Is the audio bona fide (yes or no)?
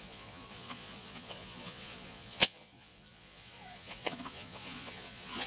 no